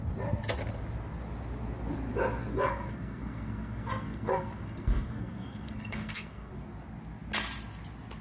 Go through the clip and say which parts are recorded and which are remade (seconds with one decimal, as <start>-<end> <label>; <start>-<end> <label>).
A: 0.0-2.5 recorded; 2.5-6.5 remade; 6.5-8.2 recorded

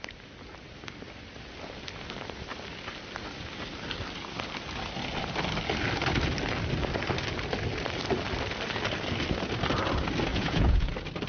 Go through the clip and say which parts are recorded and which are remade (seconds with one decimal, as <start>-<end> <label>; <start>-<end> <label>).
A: 0.0-10.3 recorded; 10.3-10.9 remade; 10.9-11.3 recorded

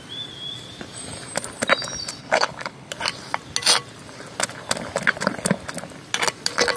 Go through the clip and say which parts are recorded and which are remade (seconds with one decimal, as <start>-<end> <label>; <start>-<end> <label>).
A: 0.0-2.2 recorded; 2.2-2.9 remade; 2.9-6.8 recorded

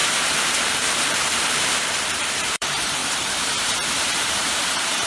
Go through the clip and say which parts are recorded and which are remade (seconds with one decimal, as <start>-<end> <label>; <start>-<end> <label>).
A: 0.0-3.0 remade; 3.0-3.9 recorded; 3.9-5.1 remade

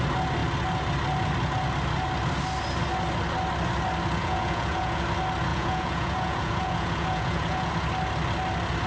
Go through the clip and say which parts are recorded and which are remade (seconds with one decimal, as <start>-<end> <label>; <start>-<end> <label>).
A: 0.0-4.2 recorded; 4.2-5.0 remade; 5.0-5.5 recorded; 5.5-7.7 remade; 7.7-8.9 recorded

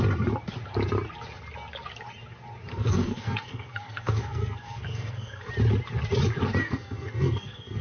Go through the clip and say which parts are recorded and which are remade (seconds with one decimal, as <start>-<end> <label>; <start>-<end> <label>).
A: 0.0-2.7 recorded; 2.7-5.5 remade; 5.5-6.6 recorded; 6.6-7.8 remade